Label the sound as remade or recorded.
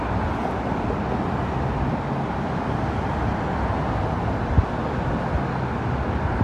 recorded